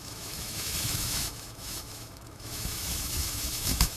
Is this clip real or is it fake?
fake